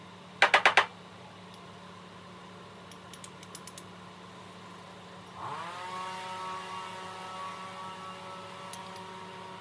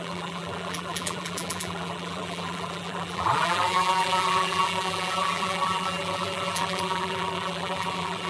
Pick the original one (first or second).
first